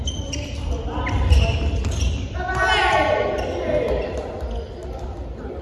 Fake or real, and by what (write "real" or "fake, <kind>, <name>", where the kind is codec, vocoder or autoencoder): real